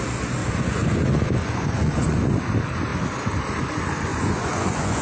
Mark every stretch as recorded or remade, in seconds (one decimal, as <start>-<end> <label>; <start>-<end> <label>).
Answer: 0.0-0.4 recorded; 0.4-2.3 remade; 2.3-4.1 recorded; 4.1-5.0 remade